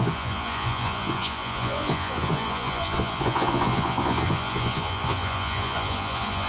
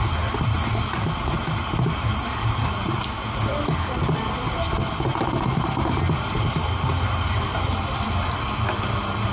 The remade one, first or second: first